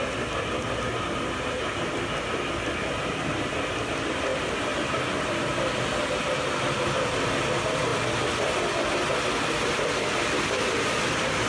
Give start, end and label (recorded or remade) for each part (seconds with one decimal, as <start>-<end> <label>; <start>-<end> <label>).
0.0-11.5 recorded